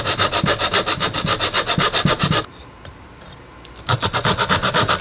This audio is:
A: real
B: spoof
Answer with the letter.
A